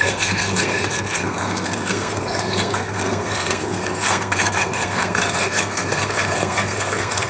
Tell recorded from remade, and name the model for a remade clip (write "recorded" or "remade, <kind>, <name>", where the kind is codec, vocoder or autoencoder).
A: remade, codec, SNAC